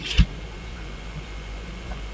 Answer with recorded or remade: remade